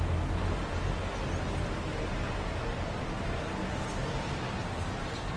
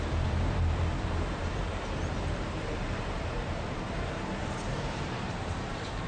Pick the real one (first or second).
first